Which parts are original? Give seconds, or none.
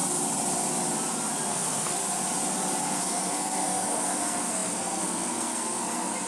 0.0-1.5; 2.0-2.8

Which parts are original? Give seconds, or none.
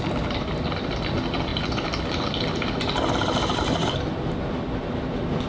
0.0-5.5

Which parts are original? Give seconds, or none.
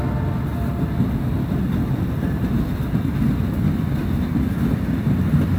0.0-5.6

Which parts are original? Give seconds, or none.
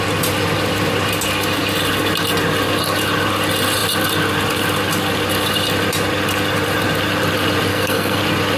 0.0-7.7; 8.2-8.6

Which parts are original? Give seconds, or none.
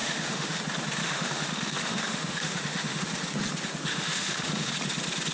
0.6-1.0; 3.0-3.9; 4.7-5.3